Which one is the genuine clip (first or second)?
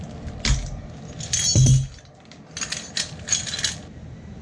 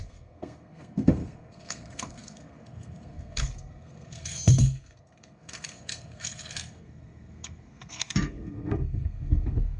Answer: first